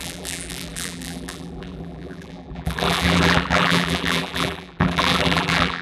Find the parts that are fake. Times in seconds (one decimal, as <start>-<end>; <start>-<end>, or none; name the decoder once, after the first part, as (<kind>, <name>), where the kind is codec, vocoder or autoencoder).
0.0-5.8 (vocoder, BigVGAN v2)